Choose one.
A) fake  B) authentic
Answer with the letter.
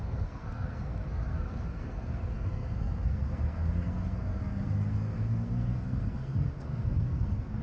A